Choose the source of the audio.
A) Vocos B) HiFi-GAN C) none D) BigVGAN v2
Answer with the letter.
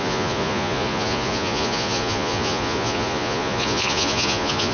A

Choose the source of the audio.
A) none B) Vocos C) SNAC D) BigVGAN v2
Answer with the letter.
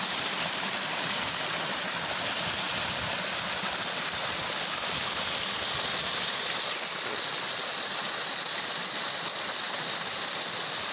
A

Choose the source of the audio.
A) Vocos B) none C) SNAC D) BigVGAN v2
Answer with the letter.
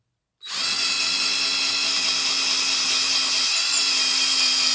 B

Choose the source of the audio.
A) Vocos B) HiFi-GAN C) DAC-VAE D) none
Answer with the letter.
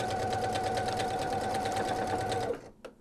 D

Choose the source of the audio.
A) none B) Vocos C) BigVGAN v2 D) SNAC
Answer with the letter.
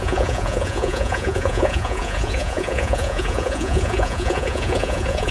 B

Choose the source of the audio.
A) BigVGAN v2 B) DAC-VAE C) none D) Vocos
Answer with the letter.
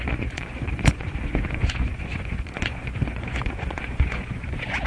D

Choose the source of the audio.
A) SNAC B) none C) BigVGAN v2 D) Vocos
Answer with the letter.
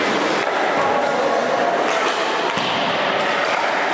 B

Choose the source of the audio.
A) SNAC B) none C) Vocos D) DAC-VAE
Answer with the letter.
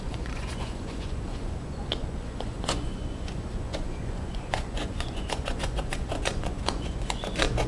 C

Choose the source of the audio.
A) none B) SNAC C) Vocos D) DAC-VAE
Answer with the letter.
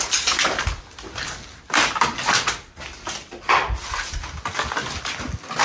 A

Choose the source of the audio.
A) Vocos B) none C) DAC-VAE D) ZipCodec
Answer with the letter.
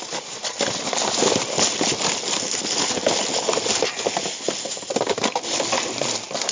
B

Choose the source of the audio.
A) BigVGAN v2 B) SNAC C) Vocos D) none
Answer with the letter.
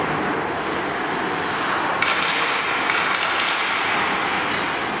D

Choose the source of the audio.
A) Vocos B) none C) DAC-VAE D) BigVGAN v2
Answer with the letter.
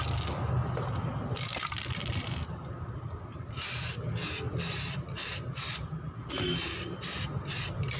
B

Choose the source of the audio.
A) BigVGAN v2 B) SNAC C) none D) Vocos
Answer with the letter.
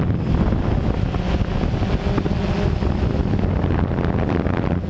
C